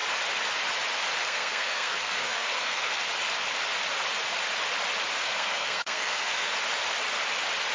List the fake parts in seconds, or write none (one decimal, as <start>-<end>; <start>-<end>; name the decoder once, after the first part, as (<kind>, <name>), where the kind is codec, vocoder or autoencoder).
1.2-3.1 (codec, SNAC); 5.2-6.5